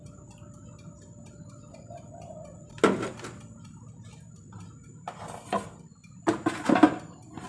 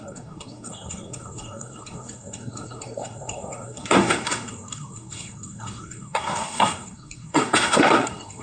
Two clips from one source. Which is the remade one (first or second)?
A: second